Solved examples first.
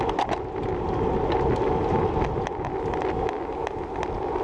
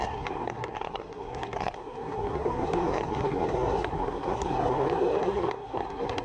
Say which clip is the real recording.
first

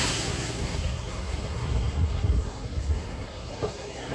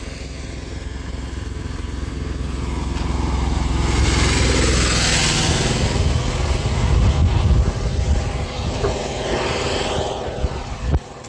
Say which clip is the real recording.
second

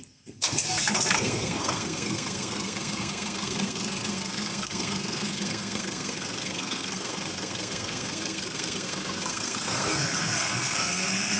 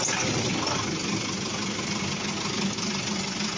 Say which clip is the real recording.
second